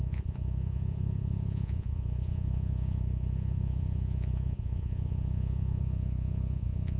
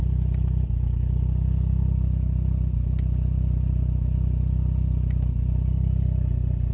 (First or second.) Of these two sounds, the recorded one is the second